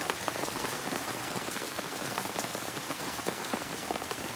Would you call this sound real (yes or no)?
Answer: no